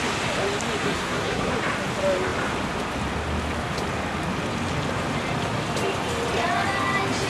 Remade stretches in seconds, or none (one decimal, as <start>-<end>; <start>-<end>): 0.8-1.5